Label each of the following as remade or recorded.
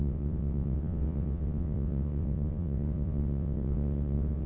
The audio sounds remade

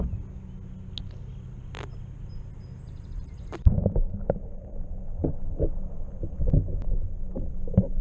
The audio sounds recorded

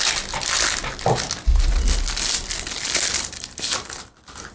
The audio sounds recorded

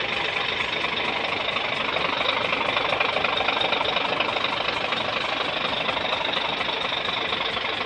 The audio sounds recorded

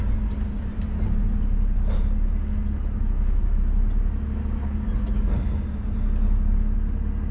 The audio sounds recorded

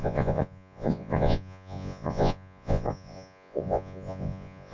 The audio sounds remade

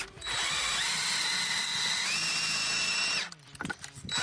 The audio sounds recorded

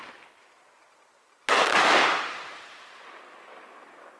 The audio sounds recorded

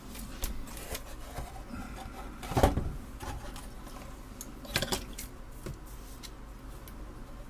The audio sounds recorded